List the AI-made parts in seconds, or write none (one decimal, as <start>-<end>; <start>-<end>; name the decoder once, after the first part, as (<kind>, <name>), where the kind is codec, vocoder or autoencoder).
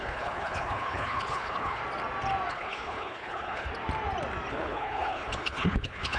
0.0-1.8 (codec, HILCodec); 2.5-3.7; 4.5-6.2